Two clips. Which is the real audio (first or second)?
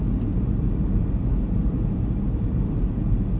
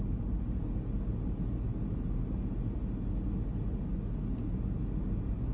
second